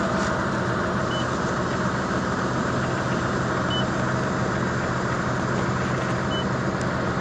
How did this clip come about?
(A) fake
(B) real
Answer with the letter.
B